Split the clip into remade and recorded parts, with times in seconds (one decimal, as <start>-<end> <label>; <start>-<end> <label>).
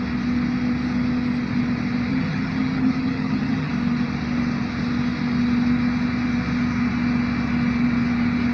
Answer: 0.0-2.1 recorded; 2.1-3.7 remade; 3.7-8.5 recorded